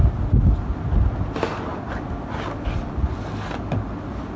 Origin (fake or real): real